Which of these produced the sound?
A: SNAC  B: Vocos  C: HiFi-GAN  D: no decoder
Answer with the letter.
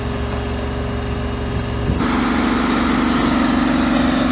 D